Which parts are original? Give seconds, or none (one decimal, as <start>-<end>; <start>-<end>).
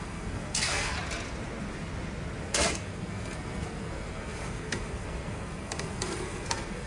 0.9-2.4